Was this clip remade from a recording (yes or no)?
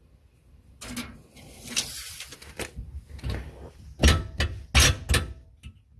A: no